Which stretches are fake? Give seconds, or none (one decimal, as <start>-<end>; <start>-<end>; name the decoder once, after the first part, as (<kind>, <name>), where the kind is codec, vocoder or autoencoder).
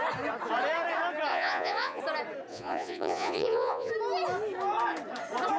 1.3-2.0 (vocoder, Vocos); 2.5-3.9